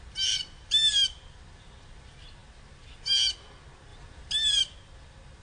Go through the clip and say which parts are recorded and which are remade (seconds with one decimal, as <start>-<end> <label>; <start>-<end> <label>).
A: 0.0-5.4 recorded